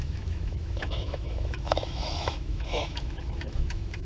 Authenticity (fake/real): fake